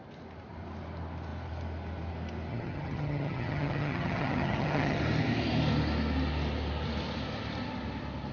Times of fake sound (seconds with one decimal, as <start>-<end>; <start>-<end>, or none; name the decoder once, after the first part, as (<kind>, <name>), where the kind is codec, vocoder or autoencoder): 2.5-5.0 (vocoder, HiFi-GAN)